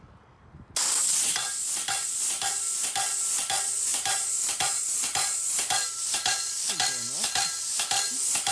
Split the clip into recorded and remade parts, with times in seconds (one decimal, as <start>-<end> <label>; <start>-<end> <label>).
0.0-3.9 recorded; 3.9-6.7 remade; 6.7-8.5 recorded